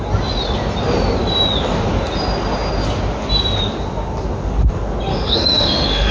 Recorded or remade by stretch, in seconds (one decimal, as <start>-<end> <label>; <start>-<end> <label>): 0.0-5.1 recorded; 5.1-6.1 remade